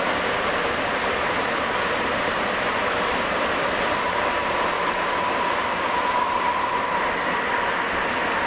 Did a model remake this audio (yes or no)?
no